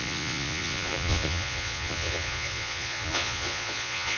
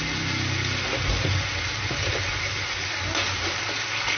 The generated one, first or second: first